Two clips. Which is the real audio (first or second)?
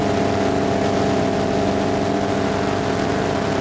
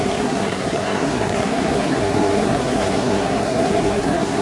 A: first